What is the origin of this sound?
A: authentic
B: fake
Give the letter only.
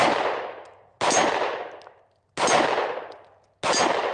A